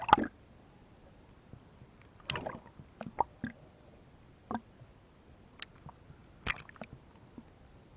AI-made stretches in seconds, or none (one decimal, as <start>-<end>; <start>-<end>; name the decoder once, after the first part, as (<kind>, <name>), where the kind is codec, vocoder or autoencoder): none

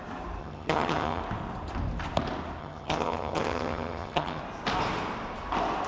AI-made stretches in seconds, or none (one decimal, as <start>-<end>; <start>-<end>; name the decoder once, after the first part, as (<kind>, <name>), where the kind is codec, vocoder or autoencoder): 0.4-1.2 (vocoder, HiFi-GAN); 2.6-4.4

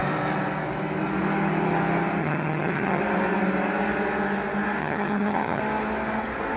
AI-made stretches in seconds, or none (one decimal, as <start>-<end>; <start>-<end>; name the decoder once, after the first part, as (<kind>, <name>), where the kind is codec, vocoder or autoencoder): 2.2-3.0 (vocoder, HiFi-GAN); 4.8-5.6